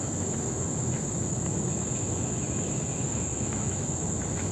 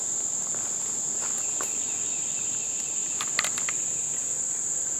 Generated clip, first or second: first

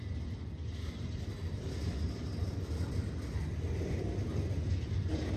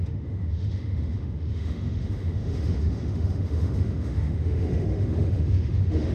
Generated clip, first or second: second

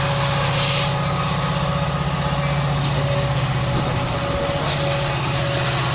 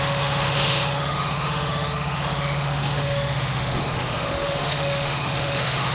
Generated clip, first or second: second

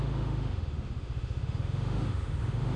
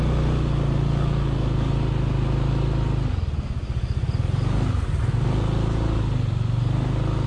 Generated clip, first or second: first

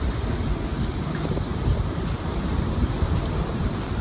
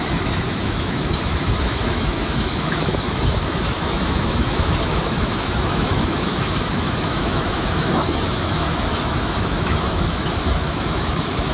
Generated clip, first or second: second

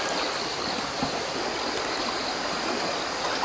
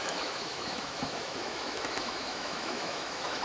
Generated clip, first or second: second